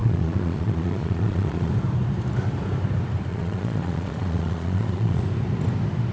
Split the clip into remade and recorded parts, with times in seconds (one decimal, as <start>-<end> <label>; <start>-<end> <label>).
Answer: 0.0-1.7 remade; 1.7-3.3 recorded; 3.3-5.2 remade; 5.2-6.1 recorded